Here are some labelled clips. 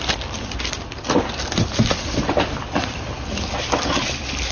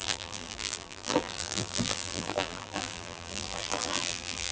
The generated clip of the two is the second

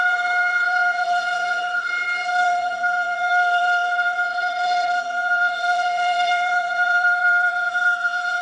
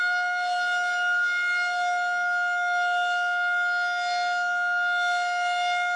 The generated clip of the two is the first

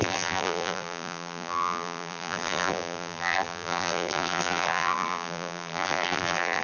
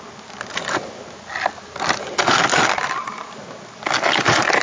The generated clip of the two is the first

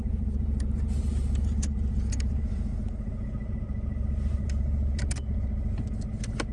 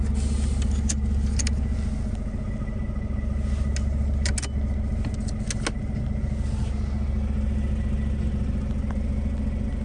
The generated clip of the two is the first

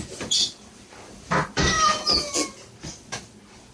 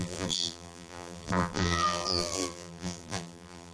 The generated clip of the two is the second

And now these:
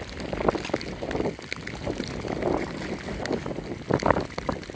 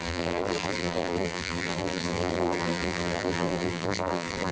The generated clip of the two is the second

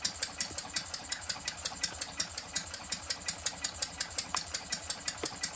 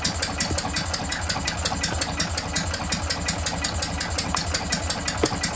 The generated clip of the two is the first